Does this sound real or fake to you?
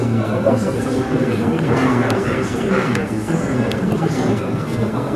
fake